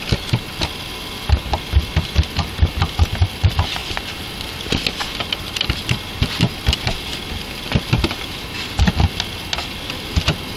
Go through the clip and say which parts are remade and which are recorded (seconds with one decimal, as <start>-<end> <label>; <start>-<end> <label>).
0.0-10.6 recorded